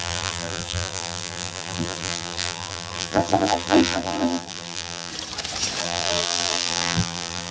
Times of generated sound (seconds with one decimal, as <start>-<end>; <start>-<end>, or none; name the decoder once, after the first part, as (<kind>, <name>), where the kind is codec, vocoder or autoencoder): 0.0-5.1 (vocoder, BigVGAN v2); 5.8-7.5